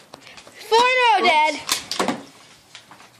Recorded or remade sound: recorded